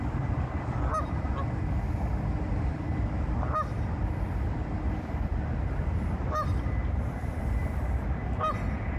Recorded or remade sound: recorded